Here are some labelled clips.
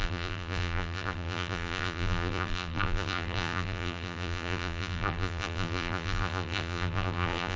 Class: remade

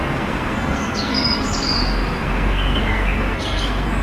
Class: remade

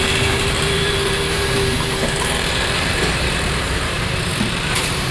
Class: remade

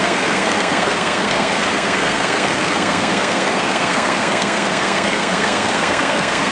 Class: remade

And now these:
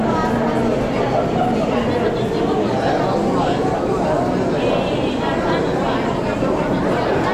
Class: recorded